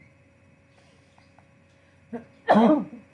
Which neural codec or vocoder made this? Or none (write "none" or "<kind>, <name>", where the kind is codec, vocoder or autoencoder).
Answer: none